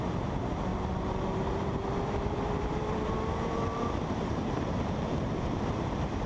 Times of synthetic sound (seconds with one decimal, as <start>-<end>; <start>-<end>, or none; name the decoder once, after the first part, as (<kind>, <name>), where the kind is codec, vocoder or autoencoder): 0.0-0.7 (vocoder, BigVGAN v2); 1.3-6.3